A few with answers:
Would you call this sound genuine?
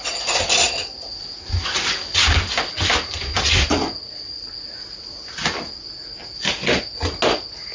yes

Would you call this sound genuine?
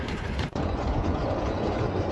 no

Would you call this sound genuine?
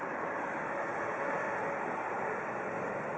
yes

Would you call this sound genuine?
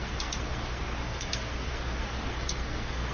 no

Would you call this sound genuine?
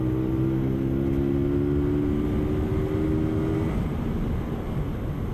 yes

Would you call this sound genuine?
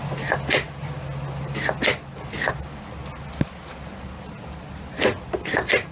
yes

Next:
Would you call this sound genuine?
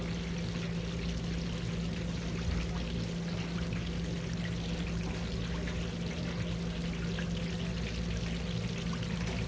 yes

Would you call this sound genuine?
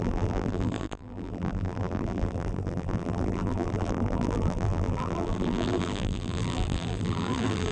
no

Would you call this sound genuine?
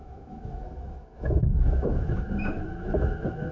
no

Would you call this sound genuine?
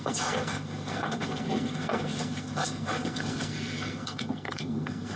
no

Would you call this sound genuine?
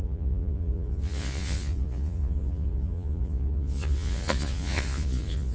no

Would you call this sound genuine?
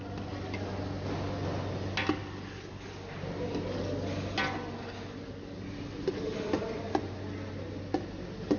yes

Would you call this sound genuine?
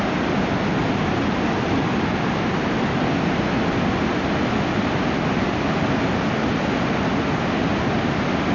yes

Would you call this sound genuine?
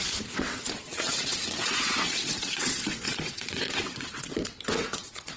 no